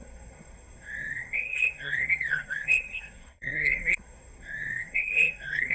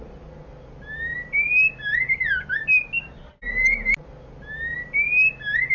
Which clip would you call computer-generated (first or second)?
first